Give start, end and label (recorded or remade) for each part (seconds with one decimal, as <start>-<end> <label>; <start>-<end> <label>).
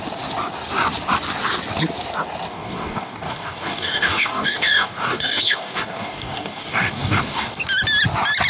0.0-2.5 recorded; 2.5-7.6 remade; 7.6-8.5 recorded